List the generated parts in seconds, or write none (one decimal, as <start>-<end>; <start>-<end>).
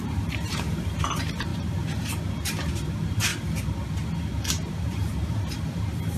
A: 0.0-3.3; 4.4-6.2